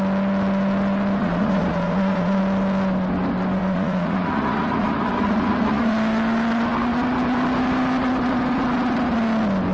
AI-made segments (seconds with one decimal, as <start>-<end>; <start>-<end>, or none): 1.2-2.4; 3.6-5.9